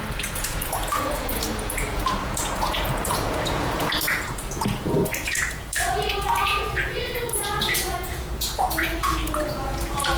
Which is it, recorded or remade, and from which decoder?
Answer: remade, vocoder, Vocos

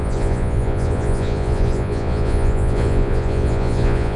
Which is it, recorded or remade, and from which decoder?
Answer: remade, vocoder, Vocos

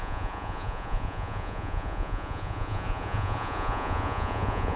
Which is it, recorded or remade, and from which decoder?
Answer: remade, vocoder, Vocos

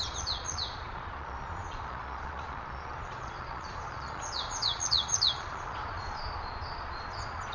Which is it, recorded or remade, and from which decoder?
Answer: remade, vocoder, Vocos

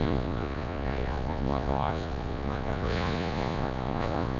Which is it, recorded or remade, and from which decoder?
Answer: remade, vocoder, Vocos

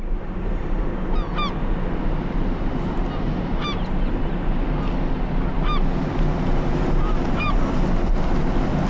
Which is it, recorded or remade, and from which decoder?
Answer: recorded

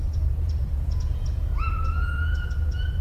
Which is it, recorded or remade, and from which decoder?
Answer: remade, vocoder, Vocos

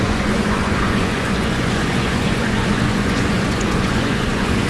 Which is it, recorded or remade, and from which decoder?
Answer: remade, vocoder, Vocos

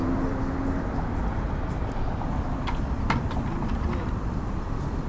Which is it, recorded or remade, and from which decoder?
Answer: recorded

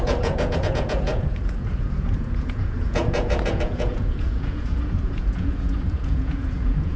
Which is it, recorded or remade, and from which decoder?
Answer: remade, vocoder, Vocos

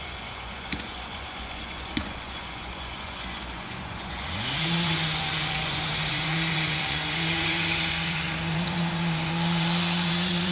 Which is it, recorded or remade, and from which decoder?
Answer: remade, vocoder, Vocos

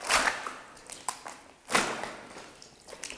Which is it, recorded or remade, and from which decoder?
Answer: recorded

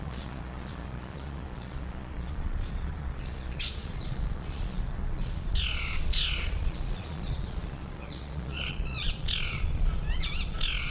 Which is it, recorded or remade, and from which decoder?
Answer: remade, vocoder, Vocos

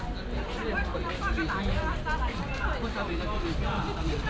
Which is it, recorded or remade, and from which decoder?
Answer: recorded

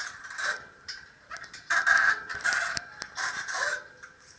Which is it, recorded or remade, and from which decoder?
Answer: recorded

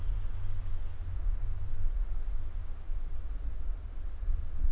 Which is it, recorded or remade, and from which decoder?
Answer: recorded